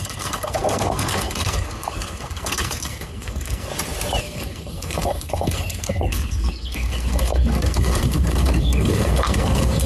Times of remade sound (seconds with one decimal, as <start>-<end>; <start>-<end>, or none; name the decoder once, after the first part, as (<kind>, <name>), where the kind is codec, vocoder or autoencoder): 0.0-3.7 (codec, SNAC); 4.2-9.9